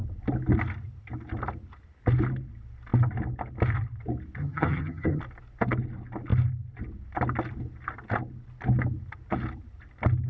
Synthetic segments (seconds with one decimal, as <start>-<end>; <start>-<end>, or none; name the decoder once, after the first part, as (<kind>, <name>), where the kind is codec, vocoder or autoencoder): 4.4-5.2 (vocoder, HiFi-GAN)